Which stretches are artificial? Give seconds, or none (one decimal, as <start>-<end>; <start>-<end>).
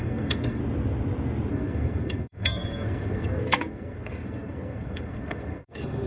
0.0-0.6; 1.5-6.1